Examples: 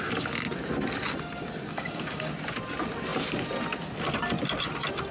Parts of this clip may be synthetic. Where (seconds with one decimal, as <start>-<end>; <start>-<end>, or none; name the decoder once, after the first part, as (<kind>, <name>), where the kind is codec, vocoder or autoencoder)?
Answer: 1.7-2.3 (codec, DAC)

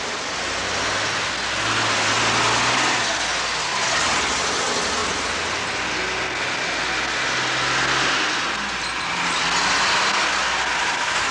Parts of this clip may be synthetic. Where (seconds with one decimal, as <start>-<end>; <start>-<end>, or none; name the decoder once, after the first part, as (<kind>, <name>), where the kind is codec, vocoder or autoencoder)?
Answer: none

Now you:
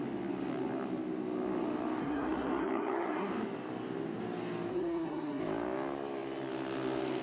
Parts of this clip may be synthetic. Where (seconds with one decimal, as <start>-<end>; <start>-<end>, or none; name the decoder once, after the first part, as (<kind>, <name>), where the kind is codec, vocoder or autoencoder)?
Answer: 2.0-3.3 (codec, SNAC); 4.7-5.4

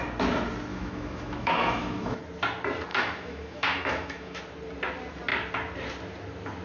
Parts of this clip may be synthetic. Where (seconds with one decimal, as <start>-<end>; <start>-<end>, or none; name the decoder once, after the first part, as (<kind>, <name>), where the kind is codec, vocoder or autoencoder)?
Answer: 0.7-2.2 (autoencoder, DAC-VAE); 2.9-4.4

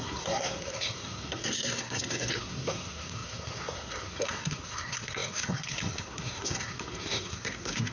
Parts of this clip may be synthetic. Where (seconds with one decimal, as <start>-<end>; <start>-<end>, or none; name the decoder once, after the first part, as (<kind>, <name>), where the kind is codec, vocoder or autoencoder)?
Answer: 0.0-7.9 (codec, SNAC)

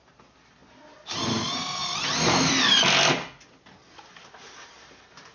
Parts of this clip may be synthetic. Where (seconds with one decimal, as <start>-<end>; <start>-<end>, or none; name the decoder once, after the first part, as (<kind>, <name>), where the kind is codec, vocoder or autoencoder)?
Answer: none